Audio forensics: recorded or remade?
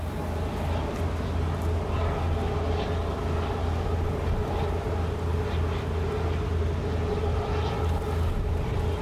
recorded